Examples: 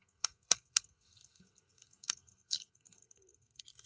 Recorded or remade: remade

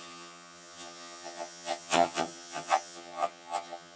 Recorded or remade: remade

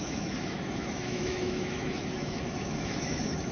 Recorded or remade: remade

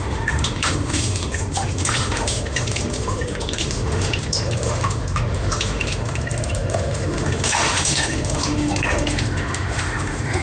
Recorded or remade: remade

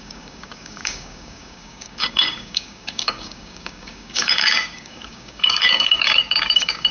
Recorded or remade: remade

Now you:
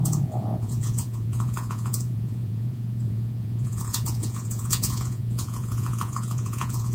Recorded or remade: remade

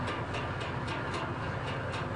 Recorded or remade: recorded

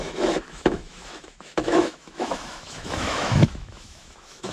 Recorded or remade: remade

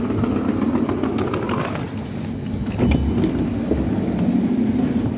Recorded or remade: recorded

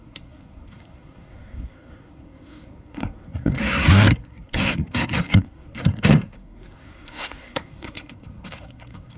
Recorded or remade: remade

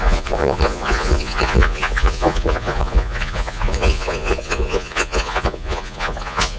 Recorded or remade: remade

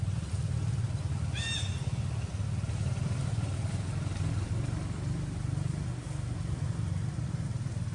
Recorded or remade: recorded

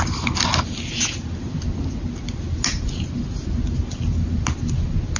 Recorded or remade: recorded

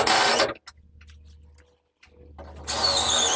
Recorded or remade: recorded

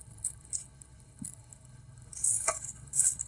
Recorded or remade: remade